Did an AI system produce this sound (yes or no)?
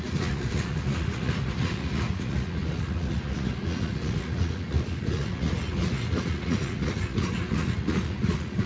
yes